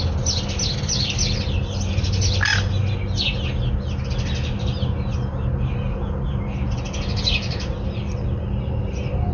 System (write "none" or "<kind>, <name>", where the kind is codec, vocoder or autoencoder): none